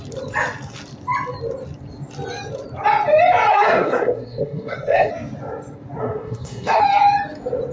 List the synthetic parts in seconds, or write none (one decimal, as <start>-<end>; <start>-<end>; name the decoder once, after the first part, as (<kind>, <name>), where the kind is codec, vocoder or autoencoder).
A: 3.5-5.1 (codec, SNAC); 6.0-6.8